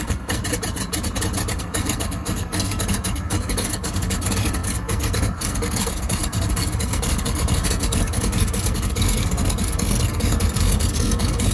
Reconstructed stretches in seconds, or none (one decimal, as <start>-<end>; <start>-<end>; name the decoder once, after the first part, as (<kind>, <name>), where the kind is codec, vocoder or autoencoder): 0.0-0.4 (codec, SNAC); 1.5-11.5